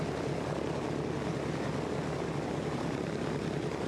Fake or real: real